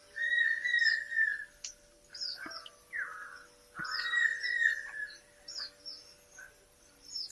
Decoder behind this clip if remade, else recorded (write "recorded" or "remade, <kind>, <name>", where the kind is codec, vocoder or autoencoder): recorded